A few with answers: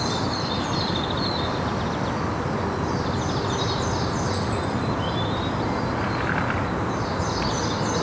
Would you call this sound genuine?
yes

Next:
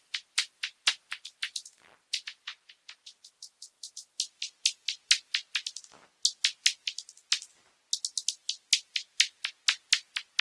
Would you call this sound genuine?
yes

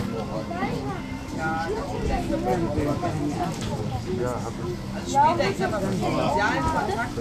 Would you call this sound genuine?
yes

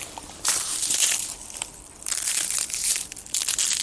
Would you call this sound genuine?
no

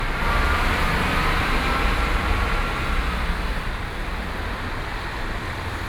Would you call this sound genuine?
no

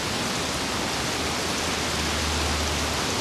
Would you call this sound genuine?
yes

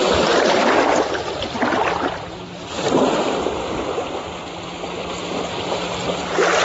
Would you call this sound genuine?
yes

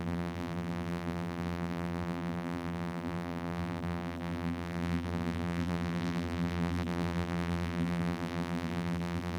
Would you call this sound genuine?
no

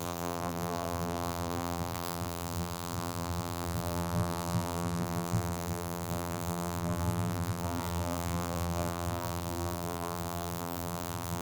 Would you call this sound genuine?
no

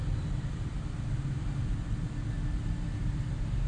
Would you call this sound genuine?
no